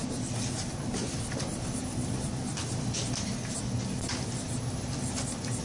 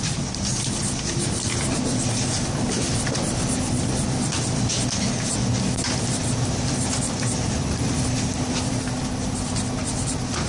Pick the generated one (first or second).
second